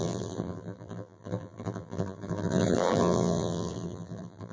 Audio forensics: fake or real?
fake